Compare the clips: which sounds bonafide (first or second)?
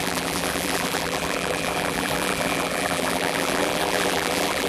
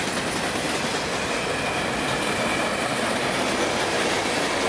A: second